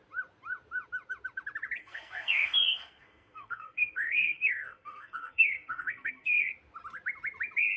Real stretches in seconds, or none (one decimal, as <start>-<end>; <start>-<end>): 0.0-1.8; 6.5-7.8